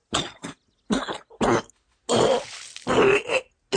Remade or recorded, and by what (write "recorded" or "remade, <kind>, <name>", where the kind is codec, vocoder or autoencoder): recorded